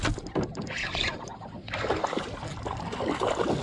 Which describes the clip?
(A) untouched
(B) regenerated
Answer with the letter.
A